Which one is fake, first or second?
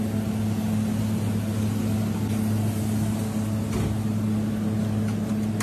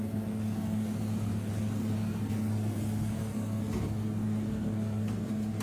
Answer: second